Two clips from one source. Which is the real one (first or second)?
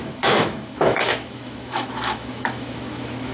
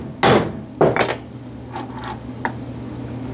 second